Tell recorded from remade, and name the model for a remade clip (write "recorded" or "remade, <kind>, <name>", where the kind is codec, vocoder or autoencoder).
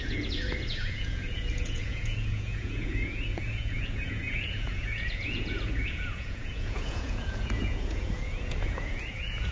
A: remade, vocoder, Vocos